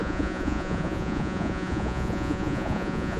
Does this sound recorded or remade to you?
remade